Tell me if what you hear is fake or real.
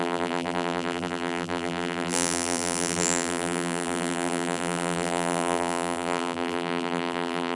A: fake